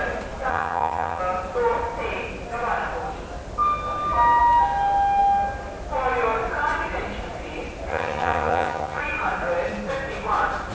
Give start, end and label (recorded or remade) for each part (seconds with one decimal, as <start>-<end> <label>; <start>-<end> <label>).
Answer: 0.0-0.5 recorded; 0.5-1.2 remade; 1.2-7.9 recorded; 7.9-9.0 remade; 9.0-10.7 recorded